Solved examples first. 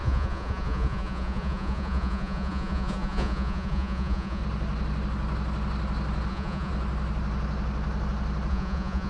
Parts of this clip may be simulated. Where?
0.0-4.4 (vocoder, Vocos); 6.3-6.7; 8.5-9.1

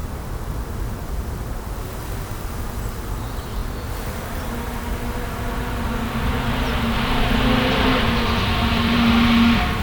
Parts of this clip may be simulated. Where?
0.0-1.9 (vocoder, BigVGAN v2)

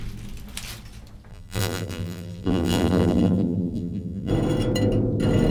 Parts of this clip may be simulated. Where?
1.3-4.3 (vocoder, BigVGAN v2)

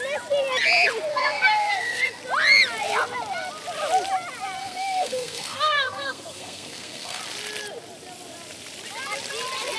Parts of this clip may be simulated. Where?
1.1-2.2 (codec, SNAC); 4.6-7.2

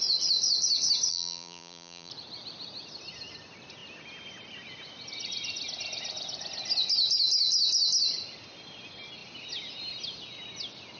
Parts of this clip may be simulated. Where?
1.1-2.1 (vocoder, BigVGAN v2)

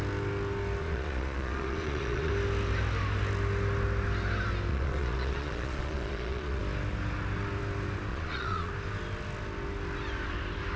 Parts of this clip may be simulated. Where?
0.8-2.3 (vocoder, Vocos); 4.7-6.6; 8.1-8.7

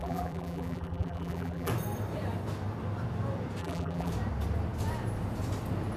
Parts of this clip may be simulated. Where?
0.0-1.7 (vocoder, BigVGAN v2); 3.6-4.1